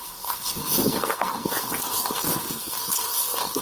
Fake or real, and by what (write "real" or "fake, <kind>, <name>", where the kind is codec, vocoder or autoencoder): fake, codec, SNAC